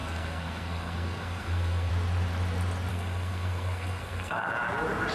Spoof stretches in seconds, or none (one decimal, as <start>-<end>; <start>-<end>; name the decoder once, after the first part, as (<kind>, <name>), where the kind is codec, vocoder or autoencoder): 0.0-1.9 (codec, SNAC); 2.9-4.5